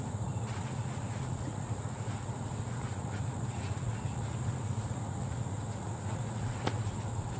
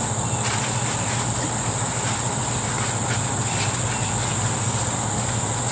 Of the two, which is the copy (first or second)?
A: first